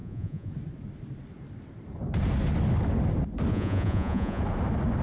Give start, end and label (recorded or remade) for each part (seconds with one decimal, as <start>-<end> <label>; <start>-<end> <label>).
0.0-0.5 remade; 0.5-3.5 recorded; 3.5-4.4 remade; 4.4-5.0 recorded